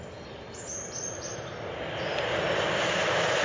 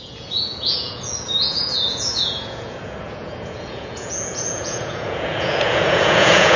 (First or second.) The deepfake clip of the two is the second